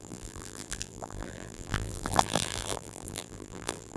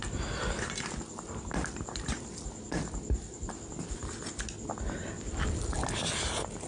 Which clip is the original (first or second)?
second